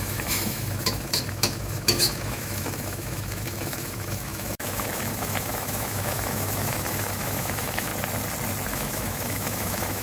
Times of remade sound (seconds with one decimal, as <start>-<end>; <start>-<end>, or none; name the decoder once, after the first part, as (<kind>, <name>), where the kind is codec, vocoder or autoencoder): 0.0-7.9 (autoencoder, DAC-VAE); 8.7-10.0